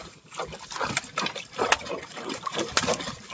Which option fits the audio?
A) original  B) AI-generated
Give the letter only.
A